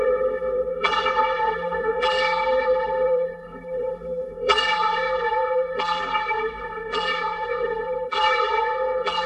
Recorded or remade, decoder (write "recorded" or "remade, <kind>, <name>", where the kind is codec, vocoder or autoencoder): remade, vocoder, BigVGAN v2